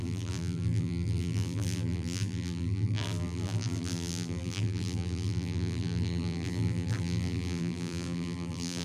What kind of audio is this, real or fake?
fake